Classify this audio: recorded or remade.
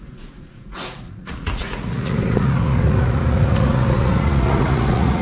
remade